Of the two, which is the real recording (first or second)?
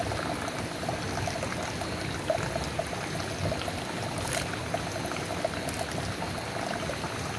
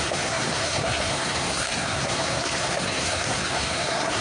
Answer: first